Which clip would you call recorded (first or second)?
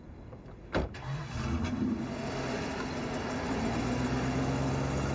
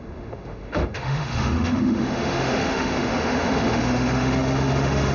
first